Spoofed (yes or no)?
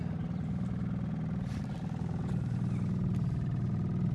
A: no